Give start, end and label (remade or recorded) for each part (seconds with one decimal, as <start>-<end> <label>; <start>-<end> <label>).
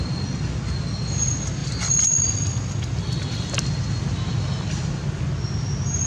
0.0-6.1 recorded